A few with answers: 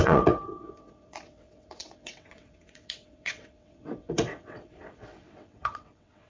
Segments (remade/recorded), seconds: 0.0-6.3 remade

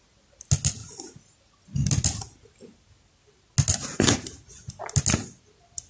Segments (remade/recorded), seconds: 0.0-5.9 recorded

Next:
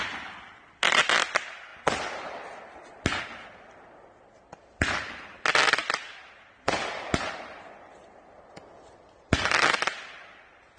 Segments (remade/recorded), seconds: 0.0-10.8 recorded

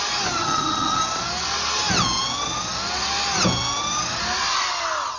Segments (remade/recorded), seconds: 0.0-0.4 recorded; 0.4-1.0 remade; 1.0-5.2 recorded

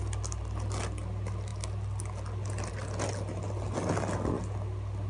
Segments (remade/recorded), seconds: 0.0-5.1 recorded

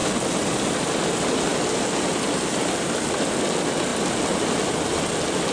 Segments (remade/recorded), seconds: 0.0-5.5 recorded